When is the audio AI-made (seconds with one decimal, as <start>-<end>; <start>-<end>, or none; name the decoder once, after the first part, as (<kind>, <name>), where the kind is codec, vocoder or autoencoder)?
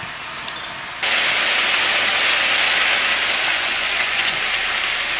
3.5-4.4 (vocoder, Vocos)